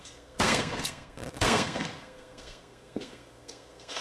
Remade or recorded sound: remade